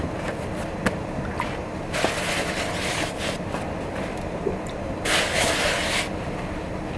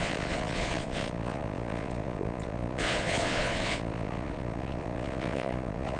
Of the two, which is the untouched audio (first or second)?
first